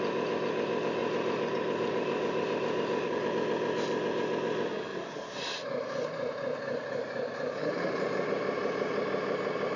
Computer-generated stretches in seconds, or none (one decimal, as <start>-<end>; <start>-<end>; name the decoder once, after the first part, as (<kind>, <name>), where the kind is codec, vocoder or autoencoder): 1.0-3.3 (vocoder, BigVGAN v2); 4.9-8.3

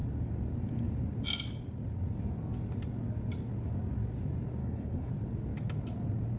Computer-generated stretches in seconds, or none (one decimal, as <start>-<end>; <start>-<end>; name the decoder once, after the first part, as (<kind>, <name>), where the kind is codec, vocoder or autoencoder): 4.6-5.1 (codec, HILCodec)

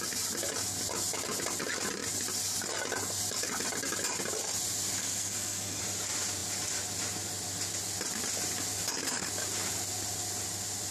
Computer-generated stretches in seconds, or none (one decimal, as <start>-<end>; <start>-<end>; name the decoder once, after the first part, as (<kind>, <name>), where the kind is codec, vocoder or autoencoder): 5.0-5.8 (codec, SNAC)